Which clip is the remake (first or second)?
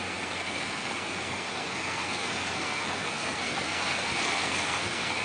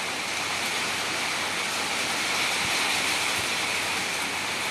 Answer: first